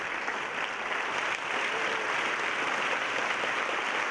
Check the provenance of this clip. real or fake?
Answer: real